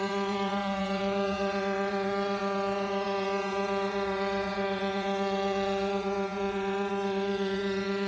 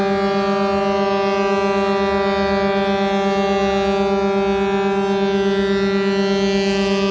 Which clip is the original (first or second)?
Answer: second